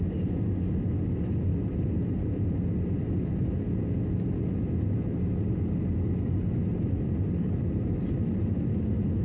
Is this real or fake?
real